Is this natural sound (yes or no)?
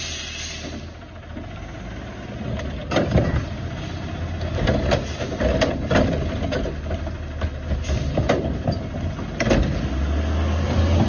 yes